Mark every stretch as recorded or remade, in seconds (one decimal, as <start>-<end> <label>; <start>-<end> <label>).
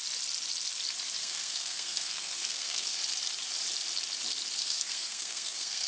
0.0-1.2 recorded; 1.2-3.0 remade; 3.0-4.6 recorded; 4.6-5.9 remade